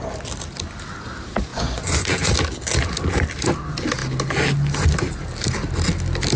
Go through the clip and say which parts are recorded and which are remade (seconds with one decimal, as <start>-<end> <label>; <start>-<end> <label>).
0.0-1.5 recorded; 1.5-2.3 remade; 2.3-6.4 recorded